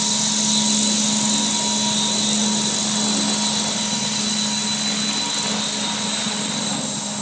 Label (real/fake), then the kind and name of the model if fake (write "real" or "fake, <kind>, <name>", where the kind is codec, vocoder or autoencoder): real